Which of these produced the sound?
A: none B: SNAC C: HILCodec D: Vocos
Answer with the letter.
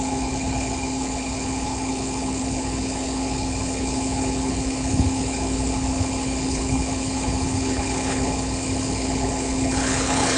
C